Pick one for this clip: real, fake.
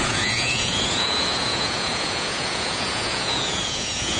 fake